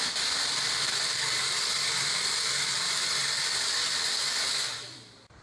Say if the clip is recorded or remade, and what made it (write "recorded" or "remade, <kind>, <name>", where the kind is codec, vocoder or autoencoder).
remade, vocoder, BigVGAN v2